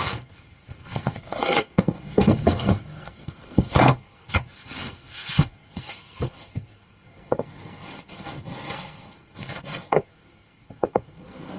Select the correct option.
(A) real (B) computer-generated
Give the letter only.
B